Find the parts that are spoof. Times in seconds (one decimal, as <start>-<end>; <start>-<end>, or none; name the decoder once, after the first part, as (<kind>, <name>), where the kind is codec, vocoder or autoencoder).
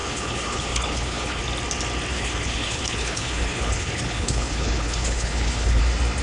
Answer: 0.0-1.4 (codec, HILCodec); 2.1-5.8